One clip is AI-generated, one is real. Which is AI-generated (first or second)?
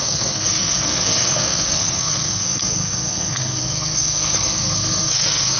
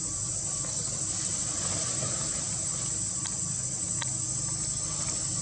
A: first